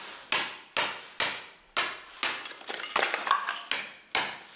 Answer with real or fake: real